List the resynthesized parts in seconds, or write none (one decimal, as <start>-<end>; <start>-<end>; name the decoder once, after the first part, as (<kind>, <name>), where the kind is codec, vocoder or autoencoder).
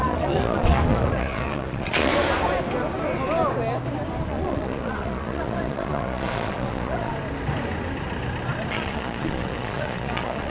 0.0-2.1 (vocoder, Vocos); 4.3-7.1; 8.7-10.5